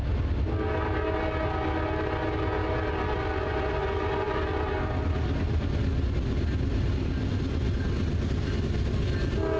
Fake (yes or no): no